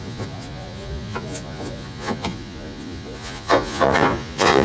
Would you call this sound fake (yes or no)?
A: yes